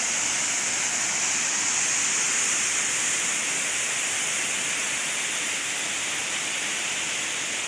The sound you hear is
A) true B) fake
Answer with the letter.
A